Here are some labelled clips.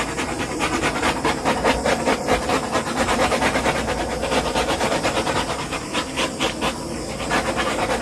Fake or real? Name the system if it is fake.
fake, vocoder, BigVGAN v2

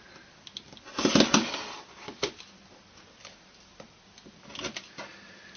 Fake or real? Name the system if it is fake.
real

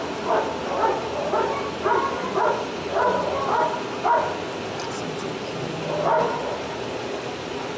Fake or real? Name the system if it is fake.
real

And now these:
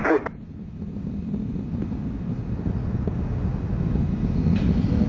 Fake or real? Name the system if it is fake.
real